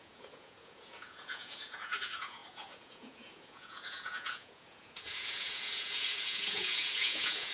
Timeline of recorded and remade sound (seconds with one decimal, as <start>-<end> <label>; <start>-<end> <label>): 0.0-7.5 remade